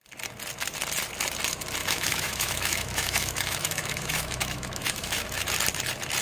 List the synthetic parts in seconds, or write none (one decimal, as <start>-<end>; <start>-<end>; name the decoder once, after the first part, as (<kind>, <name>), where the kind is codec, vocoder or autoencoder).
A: 1.8-5.4 (autoencoder, DAC-VAE)